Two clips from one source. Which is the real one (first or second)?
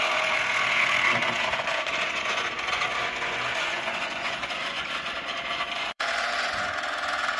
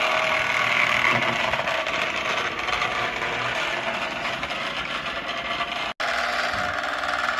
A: second